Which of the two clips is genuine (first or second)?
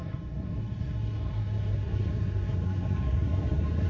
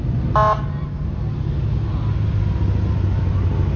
second